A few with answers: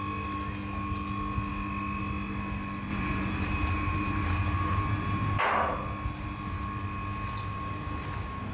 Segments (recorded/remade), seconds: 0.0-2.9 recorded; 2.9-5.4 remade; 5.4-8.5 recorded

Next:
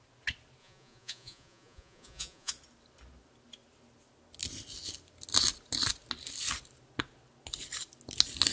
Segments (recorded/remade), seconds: 0.0-0.6 recorded; 0.6-2.5 remade; 2.5-8.5 recorded

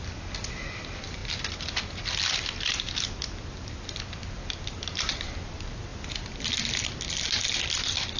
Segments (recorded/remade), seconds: 0.0-8.2 recorded

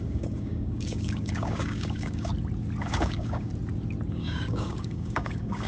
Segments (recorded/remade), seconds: 0.0-2.3 remade; 2.3-2.8 recorded; 2.8-3.5 remade; 3.5-4.1 recorded; 4.1-5.7 remade

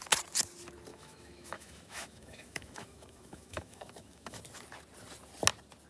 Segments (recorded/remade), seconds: 0.0-0.9 recorded; 0.9-4.4 remade; 4.4-5.9 recorded

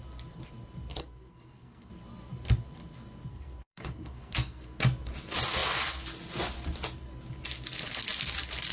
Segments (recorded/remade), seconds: 0.0-1.0 recorded; 1.0-1.9 remade; 1.9-3.3 recorded; 3.3-4.8 remade; 4.8-8.7 recorded

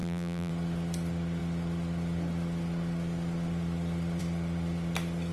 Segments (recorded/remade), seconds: 0.0-0.5 remade; 0.5-5.3 recorded